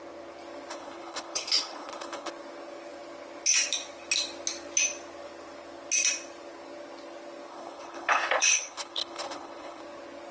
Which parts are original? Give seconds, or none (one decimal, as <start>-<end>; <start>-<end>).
0.0-0.7; 2.3-7.5; 9.8-10.3